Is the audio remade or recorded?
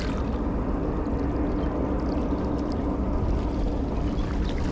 recorded